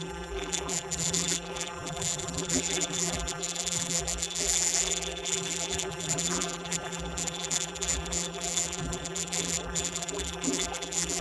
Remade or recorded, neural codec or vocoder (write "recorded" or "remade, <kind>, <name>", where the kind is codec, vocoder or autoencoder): remade, vocoder, BigVGAN v2